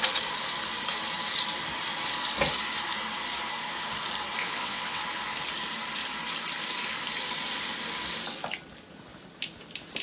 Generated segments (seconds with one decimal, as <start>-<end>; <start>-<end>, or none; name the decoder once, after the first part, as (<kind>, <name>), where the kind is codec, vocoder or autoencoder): 4.4-5.0 (vocoder, WaveNeXt)

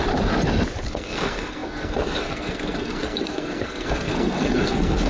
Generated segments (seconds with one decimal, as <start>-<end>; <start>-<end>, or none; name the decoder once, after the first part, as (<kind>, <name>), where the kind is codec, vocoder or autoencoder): 0.9-5.1 (codec, SNAC)

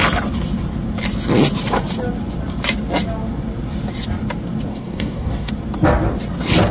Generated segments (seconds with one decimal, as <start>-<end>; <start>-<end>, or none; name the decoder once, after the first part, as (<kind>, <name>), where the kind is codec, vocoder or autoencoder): 4.7-5.5 (codec, DAC)

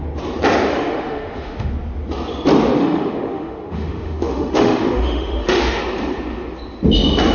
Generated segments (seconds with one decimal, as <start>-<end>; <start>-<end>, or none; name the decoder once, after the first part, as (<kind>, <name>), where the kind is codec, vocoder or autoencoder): 0.7-1.7 (autoencoder, DAC-VAE); 2.8-5.8

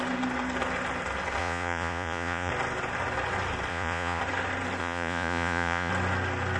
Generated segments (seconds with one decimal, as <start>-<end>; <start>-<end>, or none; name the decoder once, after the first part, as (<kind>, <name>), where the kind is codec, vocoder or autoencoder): 1.4-2.5 (vocoder, Vocos); 3.7-4.2; 4.8-5.9

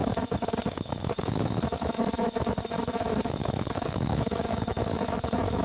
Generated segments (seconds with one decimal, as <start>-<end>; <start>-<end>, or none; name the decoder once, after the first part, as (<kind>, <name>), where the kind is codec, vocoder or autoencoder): 0.0-5.6 (autoencoder, DAC-VAE)

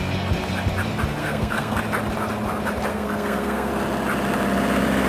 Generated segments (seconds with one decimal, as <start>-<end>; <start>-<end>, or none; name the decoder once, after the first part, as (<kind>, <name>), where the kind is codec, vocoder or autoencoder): 1.2-1.8 (codec, SNAC); 2.9-3.7

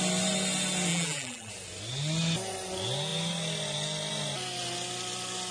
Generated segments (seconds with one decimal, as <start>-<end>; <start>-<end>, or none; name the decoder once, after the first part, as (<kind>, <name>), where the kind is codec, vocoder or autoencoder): 0.9-1.5 (vocoder, BigVGAN v2)